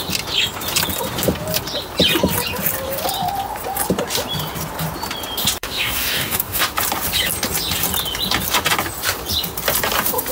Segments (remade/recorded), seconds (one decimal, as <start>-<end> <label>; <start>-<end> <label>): 0.0-5.6 recorded; 5.6-6.6 remade; 6.6-10.3 recorded